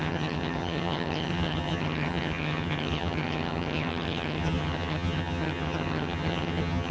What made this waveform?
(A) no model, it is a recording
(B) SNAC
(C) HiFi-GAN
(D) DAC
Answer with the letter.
C